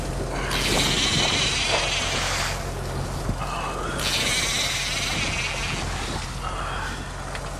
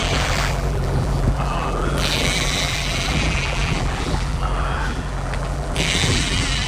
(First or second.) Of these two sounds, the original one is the first